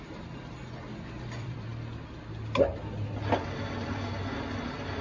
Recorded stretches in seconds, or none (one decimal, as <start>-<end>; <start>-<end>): 0.6-1.2; 1.7-5.0